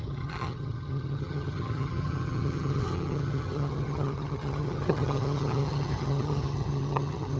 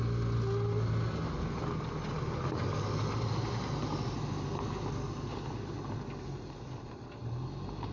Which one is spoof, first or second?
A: first